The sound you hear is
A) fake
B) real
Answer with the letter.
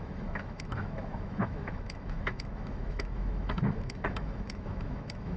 A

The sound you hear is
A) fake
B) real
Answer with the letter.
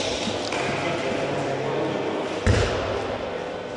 B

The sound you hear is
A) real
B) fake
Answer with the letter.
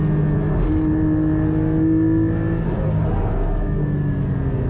A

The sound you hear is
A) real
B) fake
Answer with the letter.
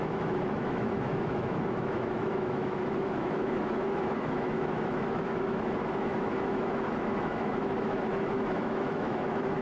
B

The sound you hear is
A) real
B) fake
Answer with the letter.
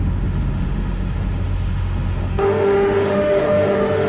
B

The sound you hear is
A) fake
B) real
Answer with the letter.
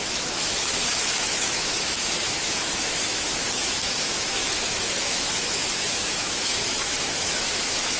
A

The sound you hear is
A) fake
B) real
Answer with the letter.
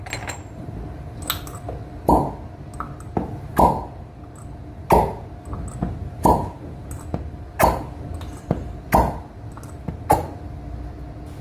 B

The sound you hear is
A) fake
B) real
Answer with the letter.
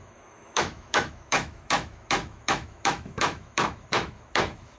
A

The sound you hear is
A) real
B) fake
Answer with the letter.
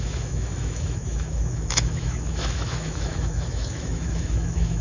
B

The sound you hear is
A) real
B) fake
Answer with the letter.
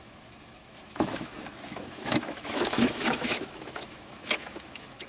B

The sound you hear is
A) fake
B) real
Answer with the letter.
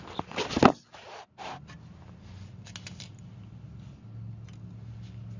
B